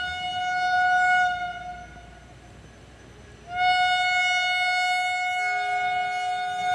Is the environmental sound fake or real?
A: real